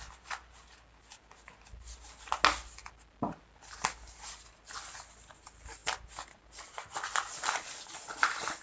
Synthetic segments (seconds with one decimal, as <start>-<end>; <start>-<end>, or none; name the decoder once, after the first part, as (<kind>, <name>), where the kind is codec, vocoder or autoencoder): none